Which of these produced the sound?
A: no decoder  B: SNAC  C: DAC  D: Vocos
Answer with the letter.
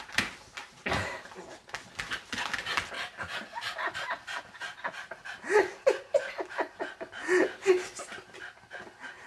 A